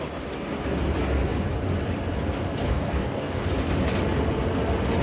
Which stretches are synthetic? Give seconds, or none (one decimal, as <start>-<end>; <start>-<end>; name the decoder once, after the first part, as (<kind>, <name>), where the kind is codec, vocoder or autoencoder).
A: 2.7-3.5 (codec, DAC)